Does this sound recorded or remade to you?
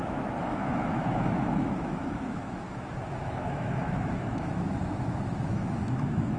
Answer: remade